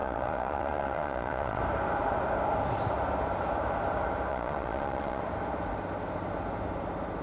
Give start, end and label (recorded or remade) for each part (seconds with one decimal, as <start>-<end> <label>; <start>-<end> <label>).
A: 0.0-1.6 remade; 1.6-4.3 recorded; 4.3-5.2 remade; 5.2-7.2 recorded